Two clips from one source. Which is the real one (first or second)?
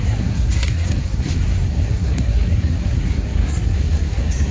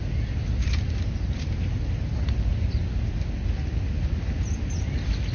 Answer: second